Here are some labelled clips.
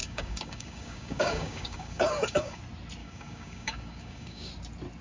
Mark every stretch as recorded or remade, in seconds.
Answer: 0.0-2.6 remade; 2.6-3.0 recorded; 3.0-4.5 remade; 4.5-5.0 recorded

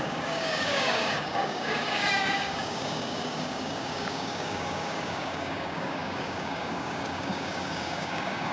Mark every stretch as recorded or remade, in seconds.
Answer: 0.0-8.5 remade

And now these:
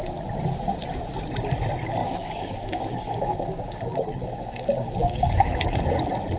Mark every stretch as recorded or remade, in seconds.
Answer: 0.0-2.0 recorded; 2.0-5.8 remade; 5.8-6.4 recorded